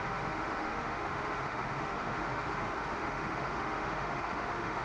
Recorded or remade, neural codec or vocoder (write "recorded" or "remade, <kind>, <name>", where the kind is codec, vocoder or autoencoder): remade, autoencoder, DAC-VAE